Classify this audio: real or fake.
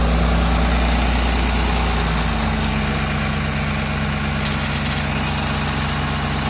real